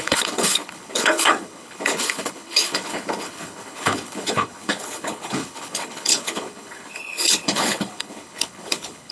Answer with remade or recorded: remade